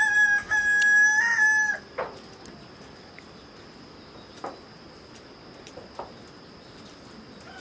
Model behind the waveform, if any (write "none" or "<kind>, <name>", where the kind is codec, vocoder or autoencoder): none